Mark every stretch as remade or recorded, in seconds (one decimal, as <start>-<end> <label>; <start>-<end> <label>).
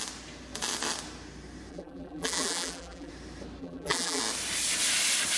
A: 0.0-1.7 recorded; 1.7-3.1 remade; 3.1-3.6 recorded; 3.6-4.2 remade; 4.2-5.4 recorded